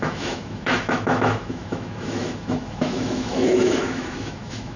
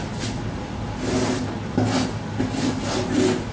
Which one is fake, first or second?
first